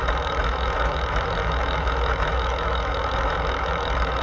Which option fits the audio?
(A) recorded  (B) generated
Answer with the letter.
B